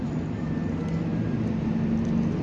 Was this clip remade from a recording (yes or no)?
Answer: no